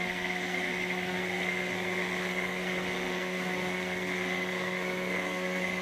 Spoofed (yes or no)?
yes